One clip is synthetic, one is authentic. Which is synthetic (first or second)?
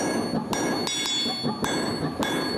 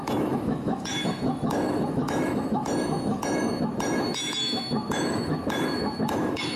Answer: second